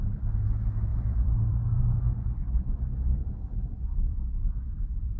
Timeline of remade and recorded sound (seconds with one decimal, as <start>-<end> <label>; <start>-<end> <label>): 0.0-0.9 recorded; 0.9-1.8 remade; 1.8-5.2 recorded

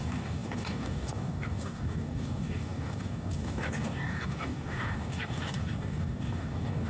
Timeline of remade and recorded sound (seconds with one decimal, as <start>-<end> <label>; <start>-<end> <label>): 0.0-6.9 remade

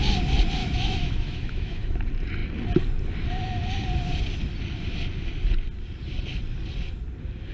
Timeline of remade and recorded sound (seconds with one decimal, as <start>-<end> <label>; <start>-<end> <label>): 0.0-0.6 recorded; 0.6-2.0 remade; 2.0-7.5 recorded

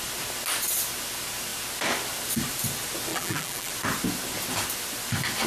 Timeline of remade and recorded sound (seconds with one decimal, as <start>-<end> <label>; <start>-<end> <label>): 0.0-3.1 recorded; 3.1-3.7 remade; 3.7-5.5 recorded

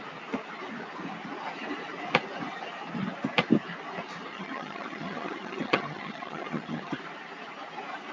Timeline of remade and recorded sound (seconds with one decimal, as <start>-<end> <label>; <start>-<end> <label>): 0.0-4.3 recorded; 4.3-7.0 remade; 7.0-8.1 recorded

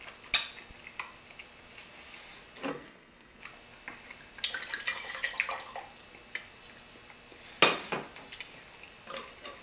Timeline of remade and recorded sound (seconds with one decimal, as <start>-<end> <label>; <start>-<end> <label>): 0.0-2.7 recorded; 2.7-3.4 remade; 3.4-9.6 recorded